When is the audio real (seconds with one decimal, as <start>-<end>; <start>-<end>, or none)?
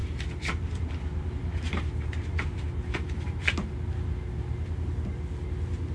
3.4-5.9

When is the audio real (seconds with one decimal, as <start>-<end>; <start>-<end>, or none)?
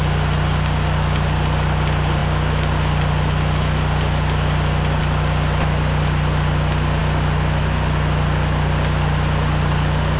0.0-10.2